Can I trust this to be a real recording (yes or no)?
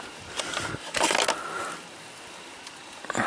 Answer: yes